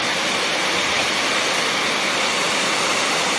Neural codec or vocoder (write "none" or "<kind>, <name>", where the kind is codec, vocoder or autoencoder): none